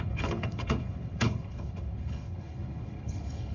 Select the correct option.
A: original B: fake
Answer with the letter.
B